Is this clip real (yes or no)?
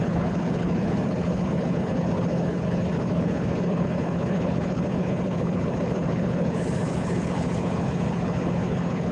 no